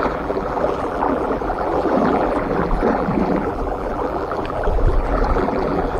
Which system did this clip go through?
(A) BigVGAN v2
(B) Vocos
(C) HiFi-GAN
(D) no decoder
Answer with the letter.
A